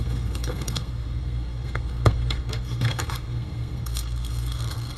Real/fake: fake